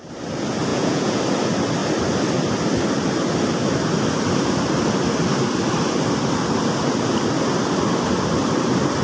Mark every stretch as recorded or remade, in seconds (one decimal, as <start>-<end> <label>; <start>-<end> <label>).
0.0-0.7 recorded; 0.7-1.2 remade; 1.2-9.0 recorded